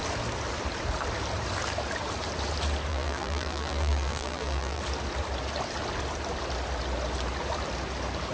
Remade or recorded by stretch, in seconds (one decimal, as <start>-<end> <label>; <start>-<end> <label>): 0.0-2.9 recorded; 2.9-4.8 remade; 4.8-8.3 recorded